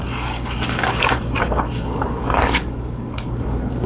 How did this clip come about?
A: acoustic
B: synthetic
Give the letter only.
B